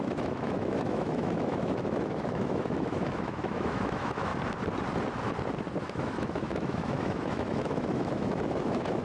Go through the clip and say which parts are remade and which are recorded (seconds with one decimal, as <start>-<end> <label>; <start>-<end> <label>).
0.0-4.3 remade; 4.3-5.8 recorded; 5.8-9.0 remade

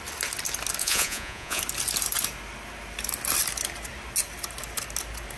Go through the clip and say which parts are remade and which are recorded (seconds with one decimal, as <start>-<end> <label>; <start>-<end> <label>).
0.0-0.8 recorded; 0.8-1.6 remade; 1.6-5.4 recorded

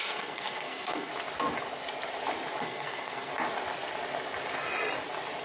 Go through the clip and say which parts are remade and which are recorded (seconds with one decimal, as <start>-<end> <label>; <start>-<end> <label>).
0.0-1.1 remade; 1.1-2.6 recorded; 2.6-3.3 remade; 3.3-5.4 recorded

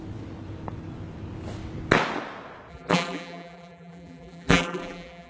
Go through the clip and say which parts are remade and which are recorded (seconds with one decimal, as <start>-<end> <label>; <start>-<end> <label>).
0.0-2.7 recorded; 2.7-5.3 remade

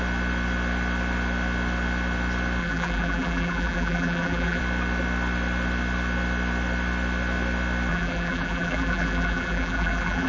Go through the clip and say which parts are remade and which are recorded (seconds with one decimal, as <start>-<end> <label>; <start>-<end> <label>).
0.0-2.6 recorded; 2.6-4.6 remade; 4.6-7.9 recorded; 7.9-10.3 remade

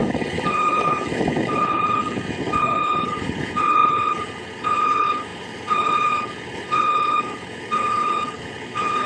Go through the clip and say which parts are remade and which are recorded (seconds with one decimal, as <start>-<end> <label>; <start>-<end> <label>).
0.0-9.1 remade

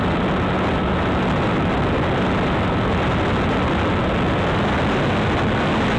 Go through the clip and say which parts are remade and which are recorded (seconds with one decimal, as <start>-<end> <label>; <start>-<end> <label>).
0.0-6.0 recorded